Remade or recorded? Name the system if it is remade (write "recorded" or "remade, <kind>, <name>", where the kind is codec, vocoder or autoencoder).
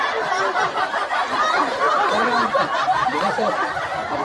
recorded